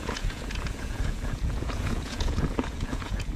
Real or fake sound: fake